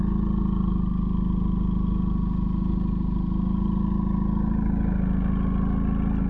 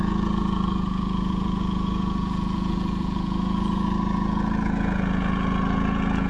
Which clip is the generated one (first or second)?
second